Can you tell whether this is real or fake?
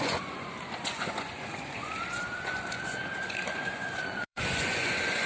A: fake